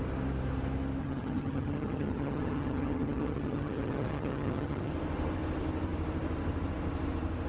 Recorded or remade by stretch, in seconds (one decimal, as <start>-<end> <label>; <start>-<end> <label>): 0.0-1.0 recorded; 1.0-4.9 remade; 4.9-7.5 recorded